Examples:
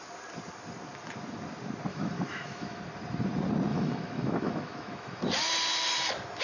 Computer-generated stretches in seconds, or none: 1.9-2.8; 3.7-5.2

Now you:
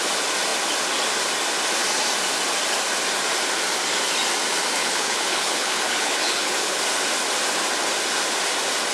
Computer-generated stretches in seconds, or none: 4.8-6.8

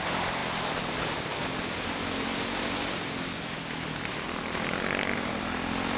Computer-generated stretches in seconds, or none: none

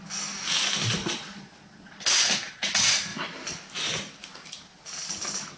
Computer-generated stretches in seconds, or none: 1.0-2.0

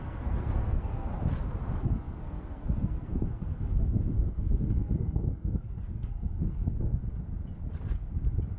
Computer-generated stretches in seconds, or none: 0.0-1.1; 1.8-7.0